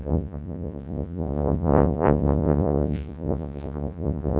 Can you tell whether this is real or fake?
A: fake